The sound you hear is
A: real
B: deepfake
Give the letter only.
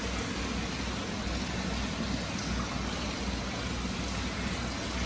A